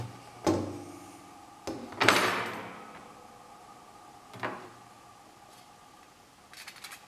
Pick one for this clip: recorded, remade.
recorded